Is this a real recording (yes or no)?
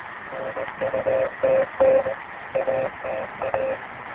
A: yes